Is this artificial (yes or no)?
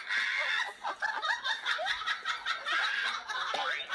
no